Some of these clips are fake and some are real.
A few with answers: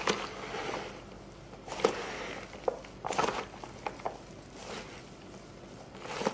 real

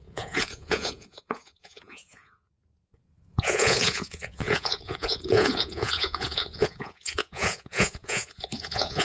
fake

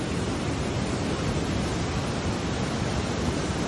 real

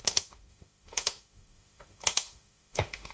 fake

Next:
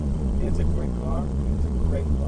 fake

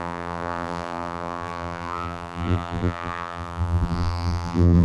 fake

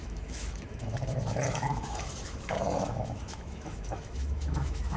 fake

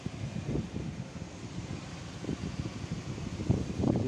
real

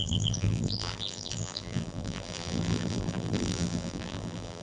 fake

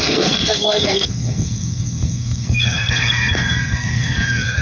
fake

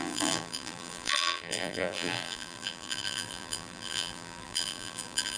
fake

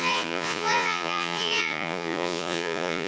fake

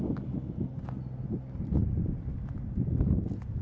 real